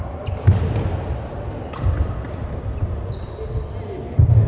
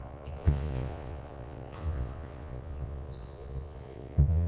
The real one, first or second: first